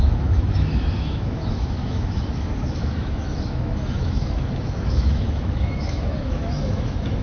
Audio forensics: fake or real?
fake